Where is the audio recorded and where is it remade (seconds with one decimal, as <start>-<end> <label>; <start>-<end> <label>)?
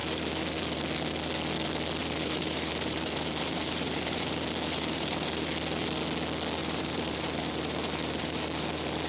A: 0.0-0.8 remade; 0.8-2.0 recorded; 2.0-5.5 remade; 5.5-6.6 recorded; 6.6-9.1 remade